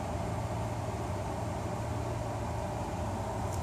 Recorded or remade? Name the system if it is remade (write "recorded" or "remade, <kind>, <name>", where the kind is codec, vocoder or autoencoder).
recorded